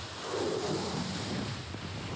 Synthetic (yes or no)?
no